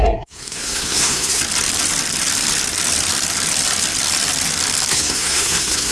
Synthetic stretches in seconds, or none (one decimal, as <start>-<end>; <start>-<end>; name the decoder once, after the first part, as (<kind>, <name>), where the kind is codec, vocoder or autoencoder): 0.0-1.4 (codec, SNAC); 4.9-5.9